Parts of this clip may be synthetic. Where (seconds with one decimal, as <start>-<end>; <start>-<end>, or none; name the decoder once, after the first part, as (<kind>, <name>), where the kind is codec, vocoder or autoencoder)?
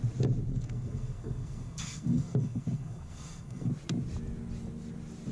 0.5-3.7 (codec, SNAC)